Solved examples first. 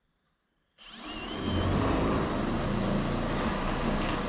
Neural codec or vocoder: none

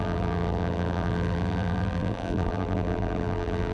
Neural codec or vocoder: vocoder, BigVGAN v2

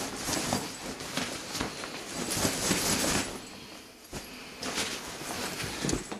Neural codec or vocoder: none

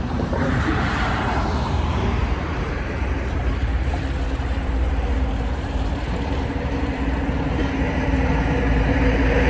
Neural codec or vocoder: vocoder, BigVGAN v2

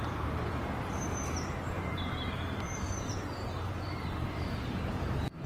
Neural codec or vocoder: vocoder, BigVGAN v2